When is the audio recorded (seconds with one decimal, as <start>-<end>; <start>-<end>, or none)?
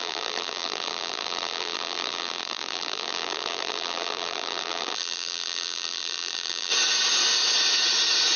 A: 6.7-8.4